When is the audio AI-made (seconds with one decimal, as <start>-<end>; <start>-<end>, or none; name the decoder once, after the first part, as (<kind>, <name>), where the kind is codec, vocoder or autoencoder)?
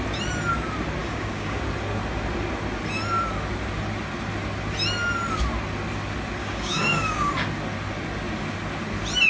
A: 1.0-1.6 (codec, DAC); 6.4-7.3